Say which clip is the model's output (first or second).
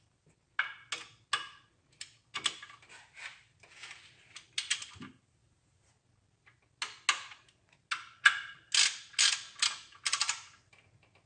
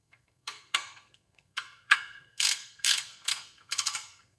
second